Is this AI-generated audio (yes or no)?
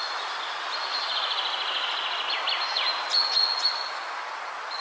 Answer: no